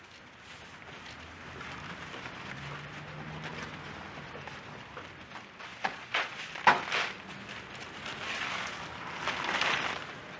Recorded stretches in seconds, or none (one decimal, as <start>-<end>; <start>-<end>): 0.0-5.7; 6.4-10.4

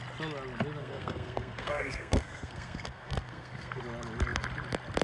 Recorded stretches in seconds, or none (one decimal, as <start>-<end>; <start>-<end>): 0.0-0.8; 3.8-5.0

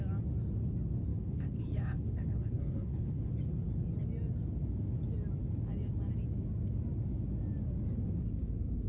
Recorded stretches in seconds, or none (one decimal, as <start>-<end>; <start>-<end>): 0.0-1.1; 3.3-8.9

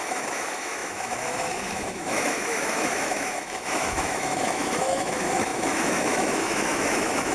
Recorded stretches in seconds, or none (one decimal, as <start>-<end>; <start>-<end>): none

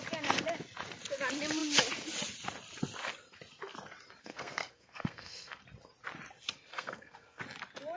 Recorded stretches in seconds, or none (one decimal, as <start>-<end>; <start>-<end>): 0.0-4.2; 5.6-6.7; 7.4-8.0

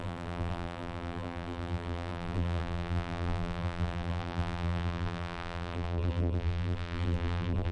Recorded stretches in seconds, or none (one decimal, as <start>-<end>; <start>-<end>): none

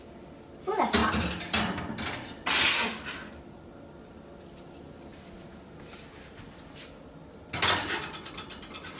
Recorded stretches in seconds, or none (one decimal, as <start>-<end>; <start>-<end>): 0.0-9.0